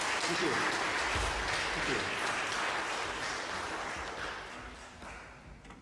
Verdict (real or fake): real